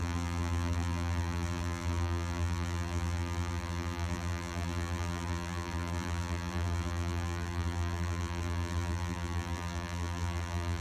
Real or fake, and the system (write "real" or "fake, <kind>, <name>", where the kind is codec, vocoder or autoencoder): fake, vocoder, BigVGAN v2